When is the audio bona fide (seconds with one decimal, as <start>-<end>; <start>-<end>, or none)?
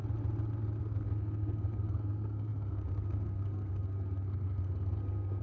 0.0-0.8